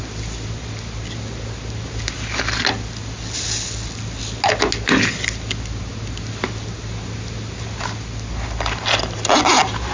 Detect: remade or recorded recorded